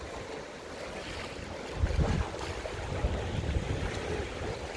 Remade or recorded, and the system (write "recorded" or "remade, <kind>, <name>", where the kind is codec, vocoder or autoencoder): recorded